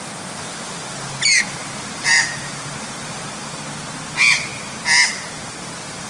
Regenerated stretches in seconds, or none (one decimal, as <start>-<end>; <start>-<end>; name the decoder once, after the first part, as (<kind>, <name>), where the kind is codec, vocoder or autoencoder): 1.6-3.2 (vocoder, BigVGAN v2)